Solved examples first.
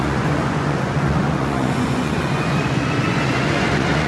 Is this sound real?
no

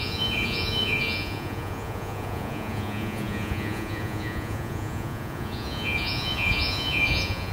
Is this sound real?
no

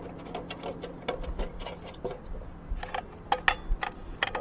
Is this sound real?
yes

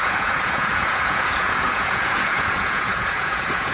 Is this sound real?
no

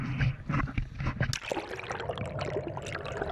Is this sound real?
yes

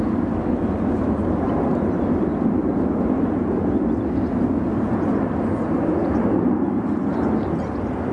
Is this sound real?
yes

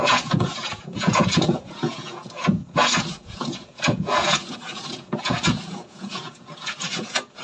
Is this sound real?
no